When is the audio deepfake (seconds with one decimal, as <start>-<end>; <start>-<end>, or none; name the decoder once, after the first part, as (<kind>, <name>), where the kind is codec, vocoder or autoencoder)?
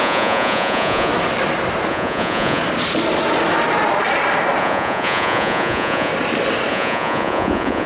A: 0.0-1.1 (vocoder, Vocos); 1.9-2.6; 4.6-6.1; 6.7-7.9